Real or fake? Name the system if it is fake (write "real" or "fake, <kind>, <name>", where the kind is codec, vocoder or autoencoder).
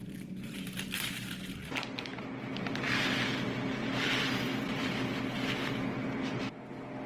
real